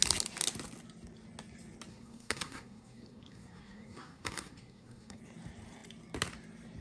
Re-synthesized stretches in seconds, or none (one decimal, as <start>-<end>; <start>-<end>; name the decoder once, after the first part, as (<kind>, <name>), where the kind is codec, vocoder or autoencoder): 1.9-5.2 (codec, SNAC)